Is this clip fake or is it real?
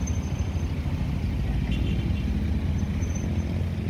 real